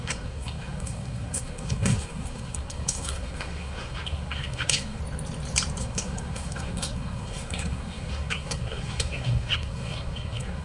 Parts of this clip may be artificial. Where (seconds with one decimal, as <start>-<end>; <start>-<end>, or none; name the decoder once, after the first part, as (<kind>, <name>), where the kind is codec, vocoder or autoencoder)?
0.0-5.0 (codec, SNAC); 5.8-10.6